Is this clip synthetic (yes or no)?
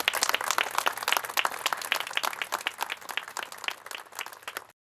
no